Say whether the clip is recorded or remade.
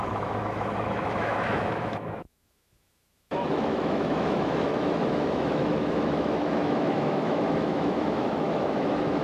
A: remade